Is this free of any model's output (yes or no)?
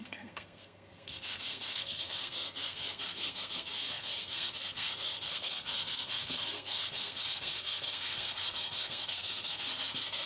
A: no